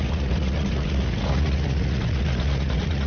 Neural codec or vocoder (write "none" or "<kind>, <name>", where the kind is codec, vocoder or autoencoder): vocoder, Vocos